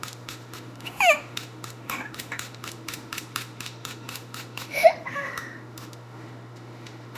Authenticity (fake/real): fake